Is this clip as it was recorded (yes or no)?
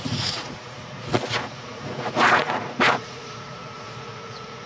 no